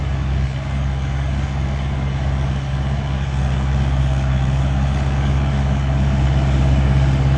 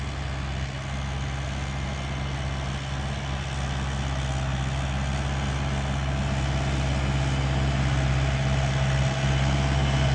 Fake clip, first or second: first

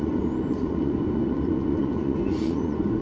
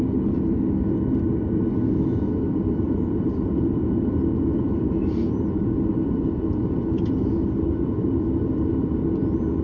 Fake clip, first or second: first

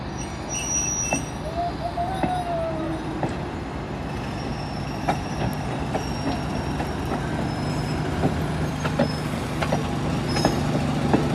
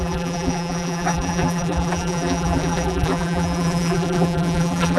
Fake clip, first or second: second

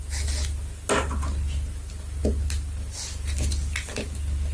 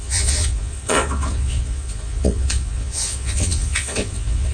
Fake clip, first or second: second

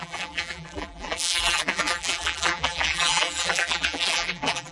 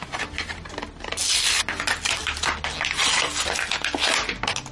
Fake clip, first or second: first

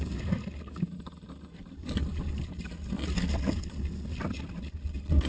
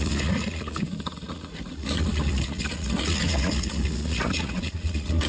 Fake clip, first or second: second